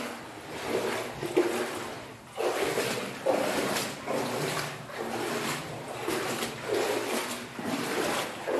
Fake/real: real